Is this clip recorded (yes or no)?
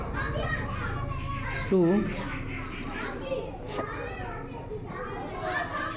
yes